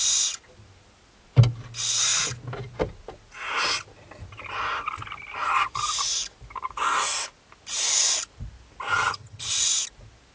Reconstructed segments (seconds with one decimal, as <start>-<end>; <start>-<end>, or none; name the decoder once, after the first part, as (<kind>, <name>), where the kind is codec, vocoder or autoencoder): 8.9-9.5 (vocoder, HiFi-GAN)